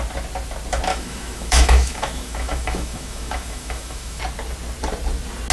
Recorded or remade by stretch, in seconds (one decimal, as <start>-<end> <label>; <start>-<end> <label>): 0.0-0.9 recorded; 0.9-4.2 remade; 4.2-5.5 recorded